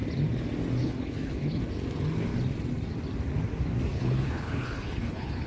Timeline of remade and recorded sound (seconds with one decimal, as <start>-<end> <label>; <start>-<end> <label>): 0.0-0.8 recorded; 0.8-1.7 remade; 1.7-3.9 recorded; 3.9-5.5 remade